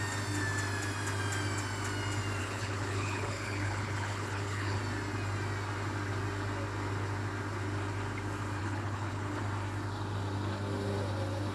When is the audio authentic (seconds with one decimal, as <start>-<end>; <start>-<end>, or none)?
0.0-2.4; 4.8-8.6; 9.4-11.5